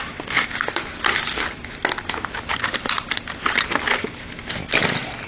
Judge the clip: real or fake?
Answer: real